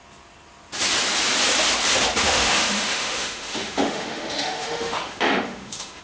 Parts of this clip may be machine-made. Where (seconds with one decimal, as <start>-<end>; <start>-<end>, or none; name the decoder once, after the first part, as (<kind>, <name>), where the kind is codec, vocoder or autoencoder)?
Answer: 2.2-6.0 (autoencoder, DAC-VAE)